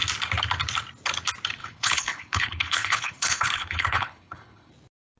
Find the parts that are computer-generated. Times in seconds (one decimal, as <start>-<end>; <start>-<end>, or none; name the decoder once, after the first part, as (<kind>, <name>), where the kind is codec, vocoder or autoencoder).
1.6-4.7 (codec, HILCodec)